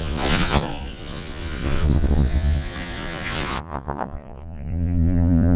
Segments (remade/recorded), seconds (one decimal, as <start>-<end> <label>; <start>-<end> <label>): 0.0-5.6 remade